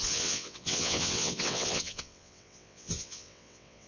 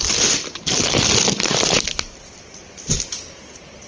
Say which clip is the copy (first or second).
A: first